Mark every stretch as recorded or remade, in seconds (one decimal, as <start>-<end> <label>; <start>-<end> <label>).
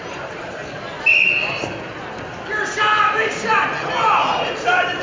0.0-0.6 remade; 0.6-3.2 recorded; 3.2-3.7 remade; 3.7-4.3 recorded; 4.3-5.0 remade